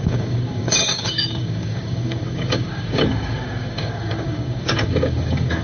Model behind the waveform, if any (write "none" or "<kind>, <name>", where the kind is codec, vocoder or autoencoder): codec, DAC